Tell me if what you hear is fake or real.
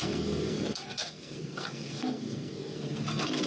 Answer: fake